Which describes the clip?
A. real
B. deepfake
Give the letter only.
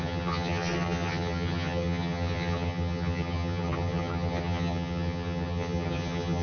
B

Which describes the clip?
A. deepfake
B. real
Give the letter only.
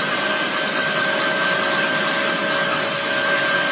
B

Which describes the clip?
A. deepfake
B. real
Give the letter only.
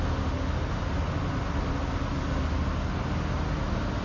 B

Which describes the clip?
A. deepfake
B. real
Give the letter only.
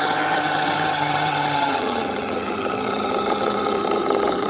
A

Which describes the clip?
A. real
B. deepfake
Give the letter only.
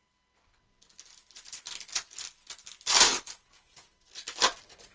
A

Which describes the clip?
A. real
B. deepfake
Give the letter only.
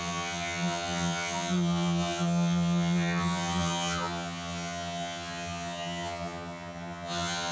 B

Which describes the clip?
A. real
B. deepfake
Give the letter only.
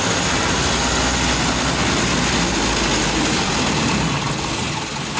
A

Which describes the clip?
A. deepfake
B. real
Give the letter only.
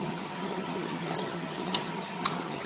A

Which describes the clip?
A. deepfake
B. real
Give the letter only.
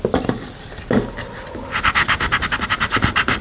B